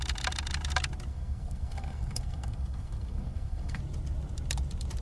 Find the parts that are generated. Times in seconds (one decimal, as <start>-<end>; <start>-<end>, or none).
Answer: 1.1-3.8